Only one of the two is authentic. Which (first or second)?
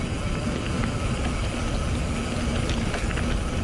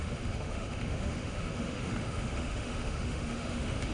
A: first